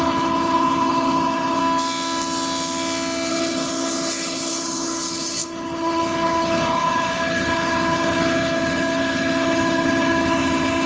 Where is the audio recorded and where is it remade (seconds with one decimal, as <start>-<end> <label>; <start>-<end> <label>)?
0.0-1.6 remade; 1.6-3.3 recorded; 3.3-10.9 remade